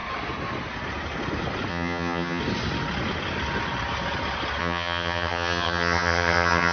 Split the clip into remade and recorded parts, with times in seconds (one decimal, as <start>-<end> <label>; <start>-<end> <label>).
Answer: 0.0-1.7 recorded; 1.7-2.4 remade; 2.4-4.6 recorded; 4.6-6.7 remade